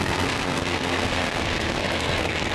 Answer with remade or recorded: remade